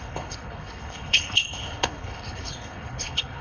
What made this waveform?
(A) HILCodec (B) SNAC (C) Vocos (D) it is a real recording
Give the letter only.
A